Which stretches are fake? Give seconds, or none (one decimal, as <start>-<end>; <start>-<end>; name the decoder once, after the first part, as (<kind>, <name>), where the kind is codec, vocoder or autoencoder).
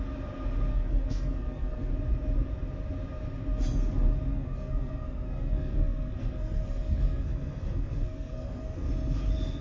0.7-1.9 (codec, SNAC); 4.3-8.9